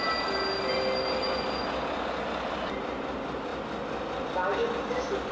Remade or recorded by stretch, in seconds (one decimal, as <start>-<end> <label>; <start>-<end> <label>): 0.0-5.3 recorded